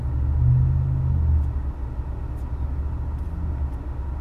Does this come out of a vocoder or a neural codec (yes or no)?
no